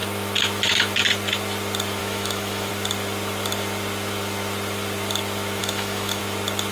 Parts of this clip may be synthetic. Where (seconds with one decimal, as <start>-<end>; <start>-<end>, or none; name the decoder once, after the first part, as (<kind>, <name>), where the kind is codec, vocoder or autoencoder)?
2.0-2.7 (autoencoder, DAC-VAE); 5.6-6.2